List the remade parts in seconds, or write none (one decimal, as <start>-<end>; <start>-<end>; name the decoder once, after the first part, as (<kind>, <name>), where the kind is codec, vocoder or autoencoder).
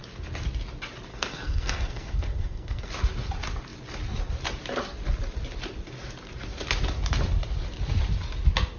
1.1-2.9 (codec, SNAC)